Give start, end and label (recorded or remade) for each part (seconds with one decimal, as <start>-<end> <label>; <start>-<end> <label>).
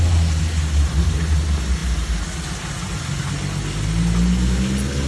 0.0-5.1 recorded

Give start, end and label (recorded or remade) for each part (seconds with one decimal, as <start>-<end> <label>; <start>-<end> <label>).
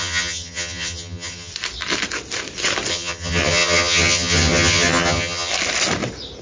0.0-1.5 remade; 1.5-2.9 recorded; 2.9-5.5 remade; 5.5-6.4 recorded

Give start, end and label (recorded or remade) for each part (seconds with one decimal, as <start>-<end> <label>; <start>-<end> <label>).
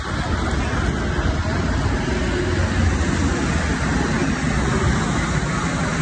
0.0-6.0 recorded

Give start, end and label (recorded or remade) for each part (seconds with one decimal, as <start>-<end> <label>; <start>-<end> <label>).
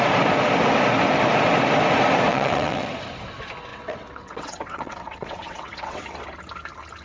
0.0-2.3 recorded; 2.3-2.9 remade; 2.9-3.7 recorded; 3.7-6.0 remade; 6.0-7.0 recorded